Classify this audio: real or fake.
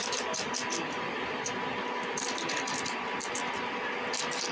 real